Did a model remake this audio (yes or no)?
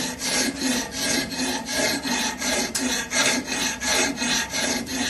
yes